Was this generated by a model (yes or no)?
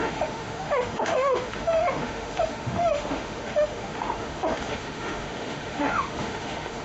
yes